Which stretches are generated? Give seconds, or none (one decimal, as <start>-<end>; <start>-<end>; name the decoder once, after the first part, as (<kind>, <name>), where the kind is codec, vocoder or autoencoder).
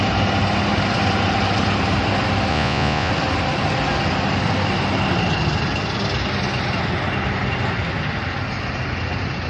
2.5-3.1 (vocoder, Vocos)